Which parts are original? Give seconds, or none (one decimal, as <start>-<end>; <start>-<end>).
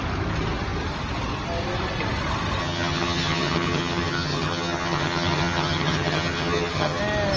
0.0-2.6; 7.0-7.4